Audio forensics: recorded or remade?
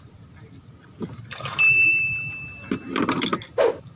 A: remade